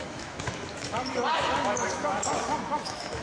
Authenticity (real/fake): fake